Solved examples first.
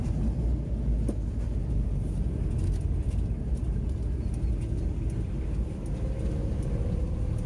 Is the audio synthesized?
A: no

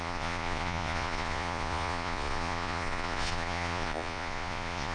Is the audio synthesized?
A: yes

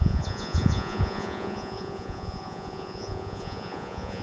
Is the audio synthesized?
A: yes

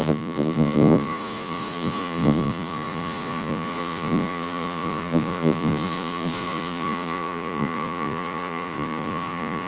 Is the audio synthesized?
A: yes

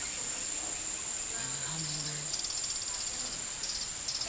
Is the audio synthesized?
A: no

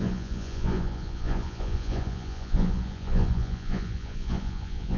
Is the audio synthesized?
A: yes